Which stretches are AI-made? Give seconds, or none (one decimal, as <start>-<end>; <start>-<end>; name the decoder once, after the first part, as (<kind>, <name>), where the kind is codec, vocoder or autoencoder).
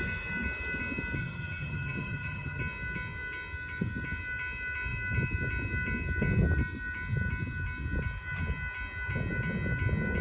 1.2-2.6 (vocoder, HiFi-GAN)